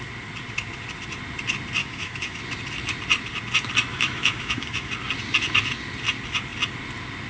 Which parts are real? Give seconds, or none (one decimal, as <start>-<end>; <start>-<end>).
0.0-1.8; 2.4-3.9; 4.9-7.3